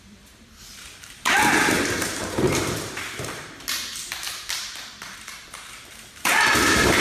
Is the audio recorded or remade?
remade